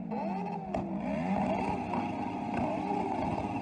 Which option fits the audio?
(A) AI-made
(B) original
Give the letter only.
B